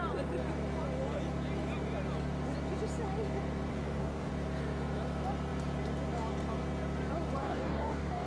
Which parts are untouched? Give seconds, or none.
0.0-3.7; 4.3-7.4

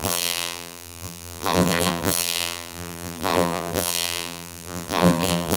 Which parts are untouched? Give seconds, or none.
none

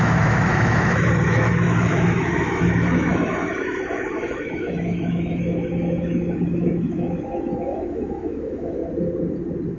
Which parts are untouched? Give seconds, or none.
8.8-9.8

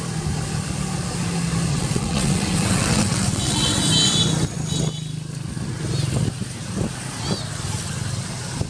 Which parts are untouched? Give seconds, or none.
0.0-1.7; 3.8-8.7

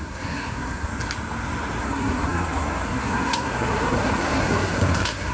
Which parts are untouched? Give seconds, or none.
0.9-1.8

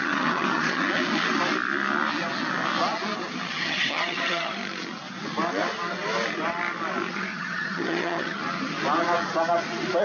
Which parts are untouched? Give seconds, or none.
0.8-3.5; 4.6-7.1; 8.4-10.0

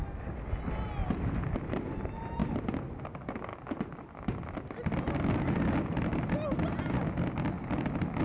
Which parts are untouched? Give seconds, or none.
0.0-1.6; 2.4-3.0; 3.5-8.2

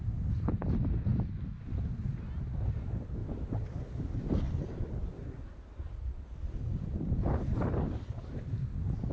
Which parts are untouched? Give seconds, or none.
0.0-9.1